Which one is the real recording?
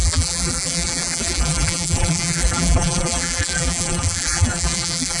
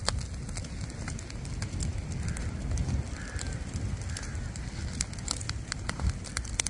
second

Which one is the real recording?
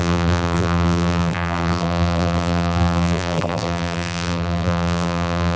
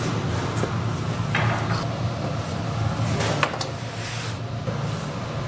second